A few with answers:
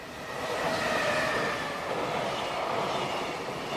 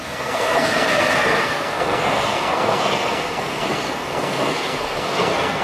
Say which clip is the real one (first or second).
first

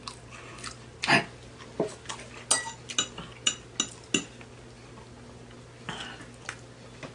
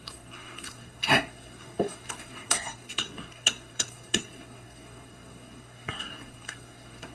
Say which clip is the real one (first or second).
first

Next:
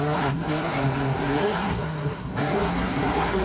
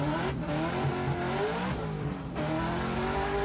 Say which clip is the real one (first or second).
second